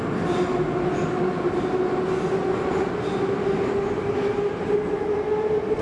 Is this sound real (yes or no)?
yes